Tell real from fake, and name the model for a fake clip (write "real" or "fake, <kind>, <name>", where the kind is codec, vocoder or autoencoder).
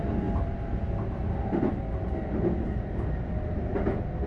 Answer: real